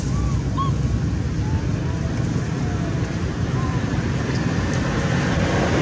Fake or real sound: real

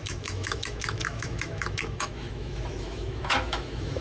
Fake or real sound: fake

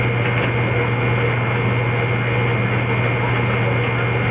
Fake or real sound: real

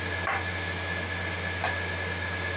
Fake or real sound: real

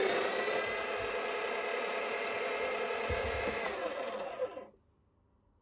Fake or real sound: real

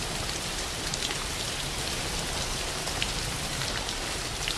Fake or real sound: real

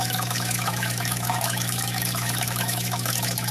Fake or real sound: fake